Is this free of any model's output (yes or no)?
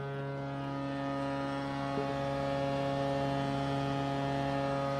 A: yes